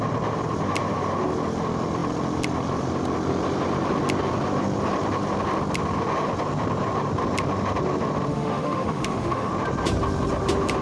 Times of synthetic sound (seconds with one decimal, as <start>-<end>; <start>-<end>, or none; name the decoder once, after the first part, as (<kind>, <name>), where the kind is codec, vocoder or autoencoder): 8.3-9.5 (autoencoder, DAC-VAE)